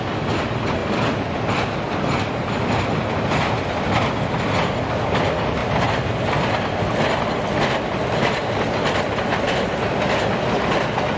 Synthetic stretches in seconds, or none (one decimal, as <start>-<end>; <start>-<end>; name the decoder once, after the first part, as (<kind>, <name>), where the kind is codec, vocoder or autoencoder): 0.8-1.4 (vocoder, BigVGAN v2)